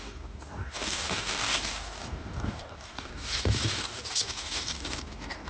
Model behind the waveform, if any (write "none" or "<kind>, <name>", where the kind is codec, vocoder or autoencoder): codec, DAC